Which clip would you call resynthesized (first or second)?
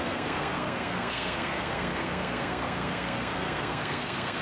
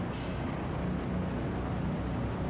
first